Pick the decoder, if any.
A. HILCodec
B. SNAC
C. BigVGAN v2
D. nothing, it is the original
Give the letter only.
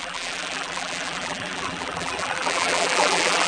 C